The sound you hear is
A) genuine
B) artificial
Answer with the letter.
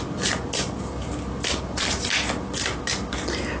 A